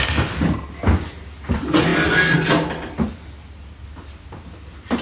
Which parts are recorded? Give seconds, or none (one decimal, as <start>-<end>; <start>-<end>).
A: 0.0-5.0